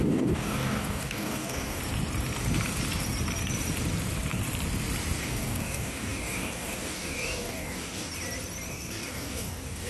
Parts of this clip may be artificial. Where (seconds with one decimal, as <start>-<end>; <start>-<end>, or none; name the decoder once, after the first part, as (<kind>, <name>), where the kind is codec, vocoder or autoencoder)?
0.0-1.8 (codec, DAC); 5.2-8.1; 8.7-9.9